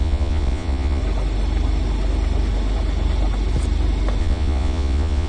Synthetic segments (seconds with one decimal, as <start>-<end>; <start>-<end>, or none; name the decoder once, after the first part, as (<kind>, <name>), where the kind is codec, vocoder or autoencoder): 0.0-1.0 (vocoder, Vocos); 4.2-5.3